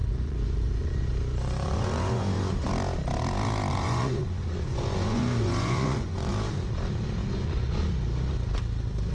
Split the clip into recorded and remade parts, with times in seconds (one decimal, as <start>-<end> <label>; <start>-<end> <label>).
0.0-2.7 remade; 2.7-3.7 recorded; 3.7-6.3 remade; 6.3-7.2 recorded; 7.2-7.8 remade; 7.8-9.1 recorded